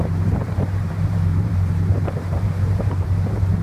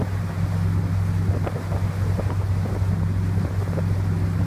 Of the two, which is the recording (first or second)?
second